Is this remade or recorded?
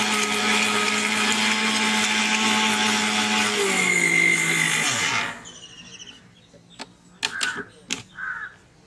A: recorded